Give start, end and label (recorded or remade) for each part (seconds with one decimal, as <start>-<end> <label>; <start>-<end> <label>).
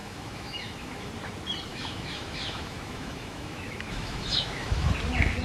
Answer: 0.0-1.1 remade; 1.1-1.7 recorded; 1.7-4.9 remade; 4.9-5.4 recorded